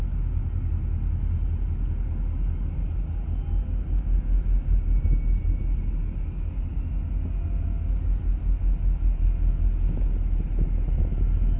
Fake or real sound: real